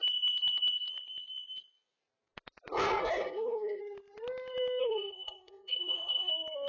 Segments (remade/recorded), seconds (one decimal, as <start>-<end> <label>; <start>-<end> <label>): 0.0-3.0 recorded; 3.0-3.8 remade; 3.8-4.8 recorded; 4.8-6.3 remade; 6.3-6.7 recorded